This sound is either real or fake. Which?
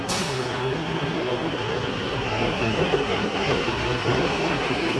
fake